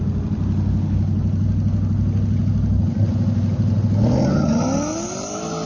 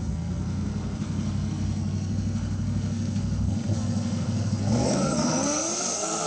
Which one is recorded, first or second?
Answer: first